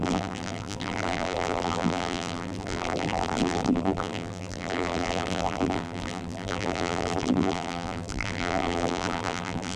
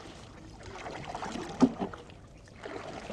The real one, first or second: second